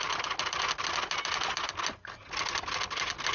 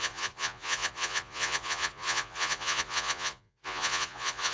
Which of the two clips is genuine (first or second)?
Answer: first